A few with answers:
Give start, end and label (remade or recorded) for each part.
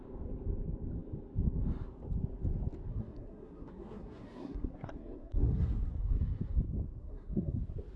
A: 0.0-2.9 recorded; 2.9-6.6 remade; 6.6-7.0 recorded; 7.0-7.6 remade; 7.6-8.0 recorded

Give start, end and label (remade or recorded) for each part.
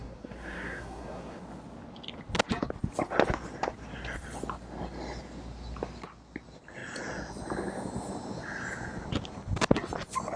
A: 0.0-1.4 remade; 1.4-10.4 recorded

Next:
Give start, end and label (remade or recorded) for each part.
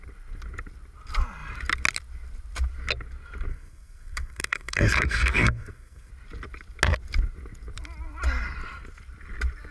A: 0.0-3.5 recorded; 3.5-6.1 remade; 6.1-9.7 recorded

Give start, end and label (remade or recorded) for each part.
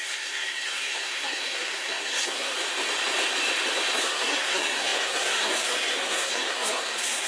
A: 0.0-2.5 remade; 2.5-4.0 recorded; 4.0-7.3 remade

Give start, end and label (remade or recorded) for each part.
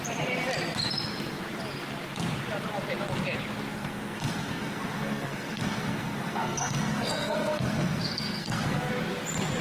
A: 0.0-3.7 recorded; 3.7-8.9 remade; 8.9-9.6 recorded